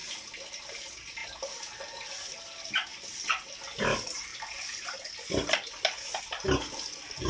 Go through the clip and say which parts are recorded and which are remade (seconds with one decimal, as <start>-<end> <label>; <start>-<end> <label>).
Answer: 0.0-7.3 recorded